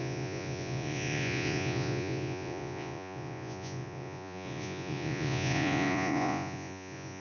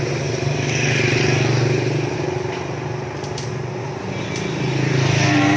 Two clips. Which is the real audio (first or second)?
second